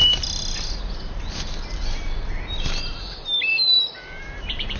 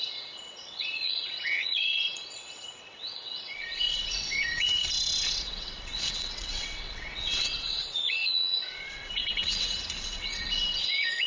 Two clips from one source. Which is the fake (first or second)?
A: second